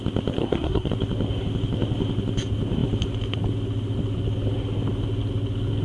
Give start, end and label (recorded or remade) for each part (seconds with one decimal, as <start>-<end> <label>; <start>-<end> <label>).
0.0-0.4 recorded; 0.4-0.9 remade; 0.9-5.8 recorded